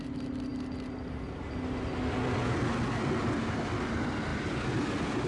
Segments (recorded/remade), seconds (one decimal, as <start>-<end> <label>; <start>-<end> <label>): 0.0-5.3 recorded